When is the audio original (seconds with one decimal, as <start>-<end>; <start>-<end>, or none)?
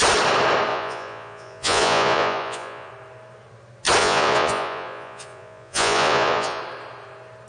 0.0-0.7; 2.9-4.0; 6.6-7.5